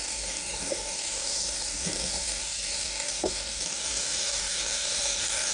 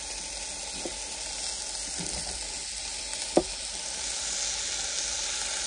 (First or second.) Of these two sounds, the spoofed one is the first